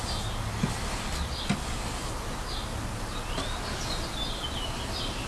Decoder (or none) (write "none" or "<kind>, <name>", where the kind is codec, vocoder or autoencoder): none